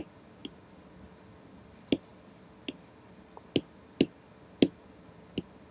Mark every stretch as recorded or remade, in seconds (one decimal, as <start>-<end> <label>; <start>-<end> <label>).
0.0-5.7 recorded